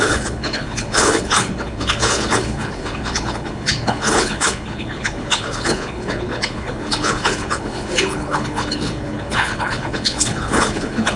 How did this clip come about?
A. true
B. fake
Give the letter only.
B